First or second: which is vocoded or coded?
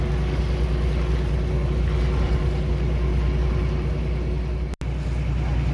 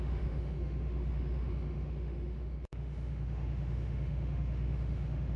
second